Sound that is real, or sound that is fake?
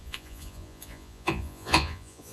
fake